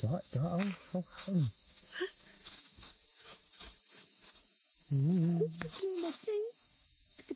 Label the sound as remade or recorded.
remade